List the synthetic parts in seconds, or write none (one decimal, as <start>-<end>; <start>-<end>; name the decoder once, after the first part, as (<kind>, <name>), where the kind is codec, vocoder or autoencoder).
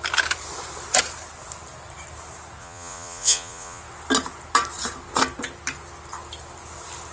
2.6-3.8 (vocoder, Vocos)